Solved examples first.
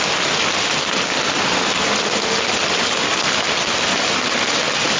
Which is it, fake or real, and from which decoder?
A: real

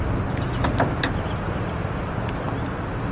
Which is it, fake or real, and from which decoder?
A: real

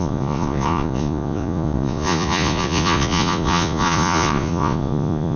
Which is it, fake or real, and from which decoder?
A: fake, vocoder, Vocos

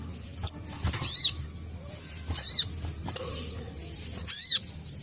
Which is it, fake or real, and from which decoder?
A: real